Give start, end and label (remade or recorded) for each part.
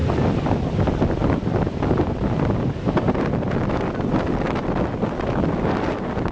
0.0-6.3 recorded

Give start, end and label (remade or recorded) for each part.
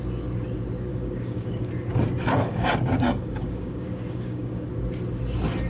0.0-0.9 recorded; 0.9-1.7 remade; 1.7-2.4 recorded; 2.4-4.7 remade; 4.7-5.7 recorded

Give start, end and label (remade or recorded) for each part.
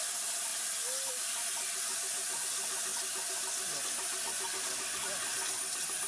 0.0-6.1 recorded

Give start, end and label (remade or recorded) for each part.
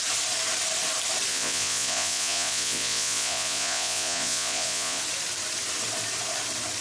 0.0-1.3 recorded; 1.3-5.0 remade; 5.0-6.8 recorded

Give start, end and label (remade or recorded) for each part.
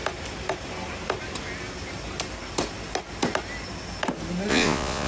0.0-4.5 recorded; 4.5-5.1 remade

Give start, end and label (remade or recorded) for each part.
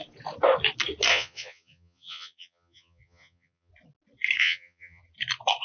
0.0-1.1 recorded; 1.1-3.7 remade; 3.7-4.4 recorded; 4.4-5.0 remade; 5.0-5.6 recorded